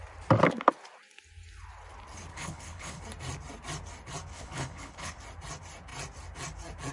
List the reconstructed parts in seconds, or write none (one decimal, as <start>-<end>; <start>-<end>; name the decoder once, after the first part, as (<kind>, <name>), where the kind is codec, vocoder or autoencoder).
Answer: 2.3-3.0 (codec, HILCodec); 4.3-5.2